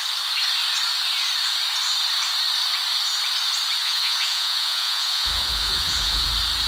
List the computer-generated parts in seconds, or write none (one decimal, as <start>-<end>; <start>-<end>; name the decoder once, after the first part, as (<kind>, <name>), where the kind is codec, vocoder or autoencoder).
3.8-6.3 (vocoder, Vocos)